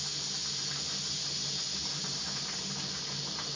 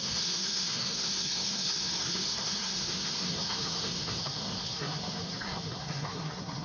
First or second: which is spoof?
second